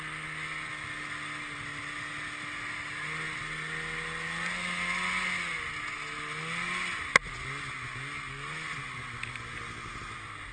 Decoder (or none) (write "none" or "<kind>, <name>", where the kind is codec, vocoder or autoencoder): none